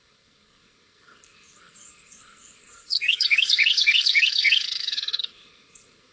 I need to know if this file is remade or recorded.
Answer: remade